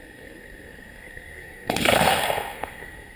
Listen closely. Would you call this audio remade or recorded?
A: remade